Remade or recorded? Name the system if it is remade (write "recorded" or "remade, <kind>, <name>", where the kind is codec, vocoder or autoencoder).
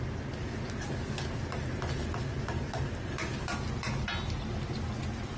recorded